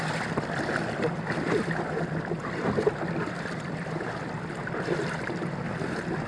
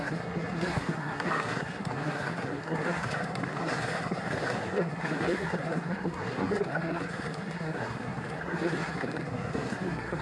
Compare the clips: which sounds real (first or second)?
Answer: first